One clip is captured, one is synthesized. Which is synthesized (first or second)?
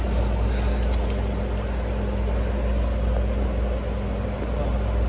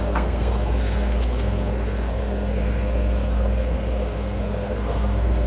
second